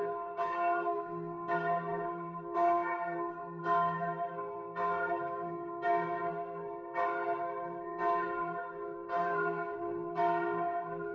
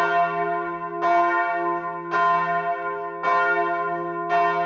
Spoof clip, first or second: first